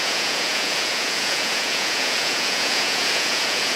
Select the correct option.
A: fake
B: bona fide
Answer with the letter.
A